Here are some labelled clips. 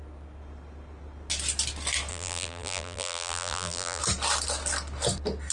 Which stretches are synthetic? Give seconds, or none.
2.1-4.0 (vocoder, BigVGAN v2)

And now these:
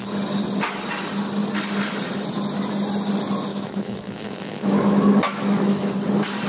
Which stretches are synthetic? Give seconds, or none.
3.5-5.9 (autoencoder, DAC-VAE)

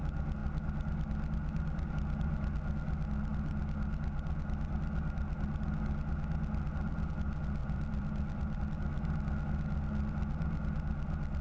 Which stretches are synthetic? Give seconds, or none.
7.6-8.6 (vocoder, BigVGAN v2)

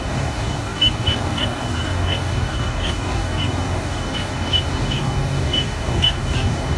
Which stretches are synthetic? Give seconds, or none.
0.0-6.8 (codec, DAC)